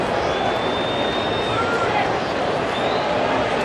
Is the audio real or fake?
real